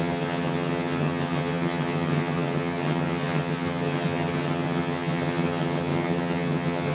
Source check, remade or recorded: remade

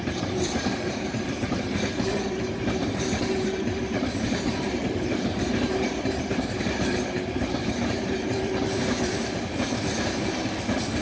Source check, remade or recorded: remade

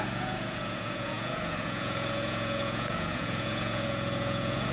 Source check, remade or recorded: remade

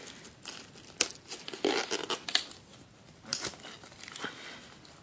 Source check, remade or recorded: recorded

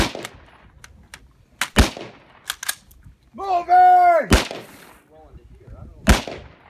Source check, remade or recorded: recorded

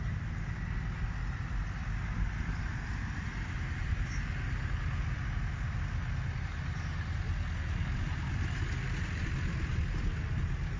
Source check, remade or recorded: recorded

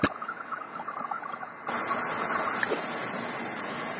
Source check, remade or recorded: recorded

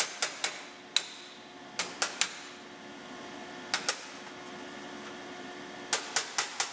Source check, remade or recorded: recorded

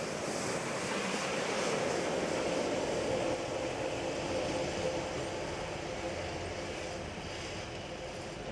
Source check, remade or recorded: recorded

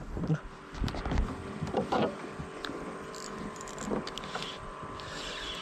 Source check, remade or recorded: recorded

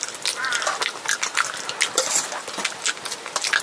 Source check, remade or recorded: recorded